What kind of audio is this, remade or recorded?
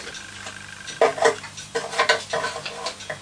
recorded